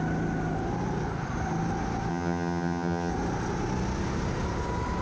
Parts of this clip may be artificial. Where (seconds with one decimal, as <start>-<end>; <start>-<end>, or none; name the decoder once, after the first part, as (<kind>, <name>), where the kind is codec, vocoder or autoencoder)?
2.1-3.1 (vocoder, HiFi-GAN)